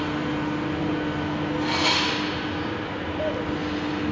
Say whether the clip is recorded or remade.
recorded